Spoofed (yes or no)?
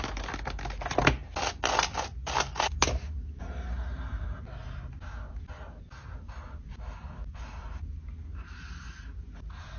no